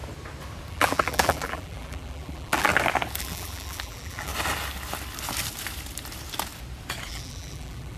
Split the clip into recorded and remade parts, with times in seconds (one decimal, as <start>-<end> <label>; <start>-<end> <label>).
0.0-0.7 recorded; 0.7-2.7 remade; 2.7-3.2 recorded; 3.2-4.3 remade; 4.3-7.1 recorded; 7.1-8.0 remade